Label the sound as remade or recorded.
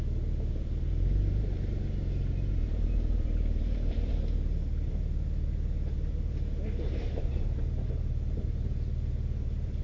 remade